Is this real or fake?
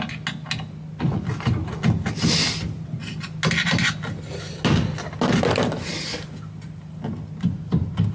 real